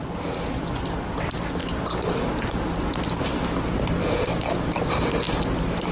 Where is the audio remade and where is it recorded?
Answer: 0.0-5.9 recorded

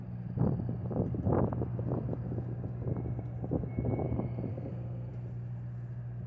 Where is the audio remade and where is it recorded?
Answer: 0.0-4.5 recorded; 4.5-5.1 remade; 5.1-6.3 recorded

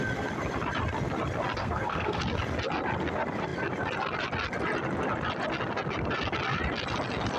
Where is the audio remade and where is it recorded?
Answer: 0.0-1.6 recorded; 1.6-2.2 remade; 2.2-7.4 recorded

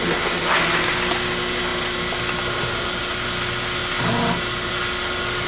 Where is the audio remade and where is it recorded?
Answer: 0.0-5.5 recorded

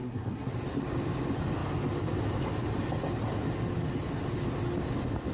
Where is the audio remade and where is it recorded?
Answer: 0.0-0.5 remade; 0.5-5.3 recorded